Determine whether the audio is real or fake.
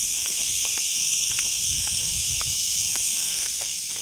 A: fake